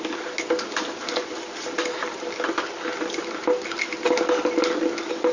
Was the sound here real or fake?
real